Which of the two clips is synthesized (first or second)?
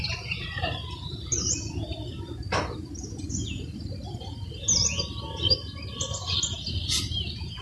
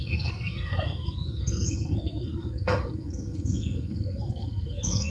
second